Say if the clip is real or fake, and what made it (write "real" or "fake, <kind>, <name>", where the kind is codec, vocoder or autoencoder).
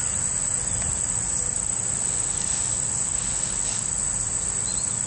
real